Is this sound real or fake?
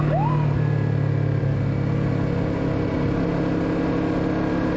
real